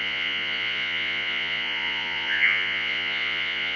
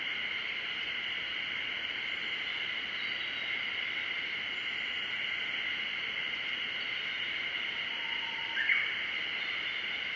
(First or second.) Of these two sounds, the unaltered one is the second